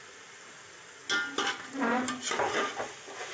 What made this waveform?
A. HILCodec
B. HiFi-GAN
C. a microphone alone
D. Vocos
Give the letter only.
C